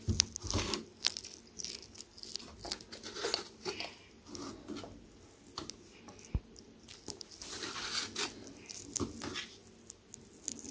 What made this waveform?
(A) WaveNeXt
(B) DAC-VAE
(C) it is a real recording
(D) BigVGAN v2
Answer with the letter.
C